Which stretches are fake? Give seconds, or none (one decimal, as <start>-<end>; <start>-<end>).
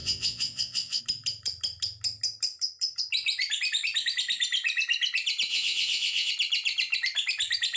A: 0.0-1.0; 5.5-6.3